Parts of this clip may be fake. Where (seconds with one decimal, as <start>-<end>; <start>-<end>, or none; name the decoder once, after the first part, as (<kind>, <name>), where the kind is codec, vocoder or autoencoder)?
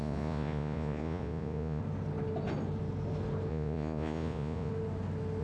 0.0-1.8 (vocoder, Vocos); 3.5-4.7